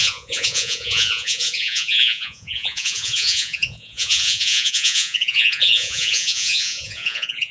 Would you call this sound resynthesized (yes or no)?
yes